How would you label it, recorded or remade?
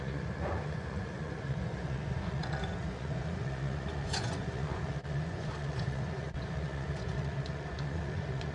remade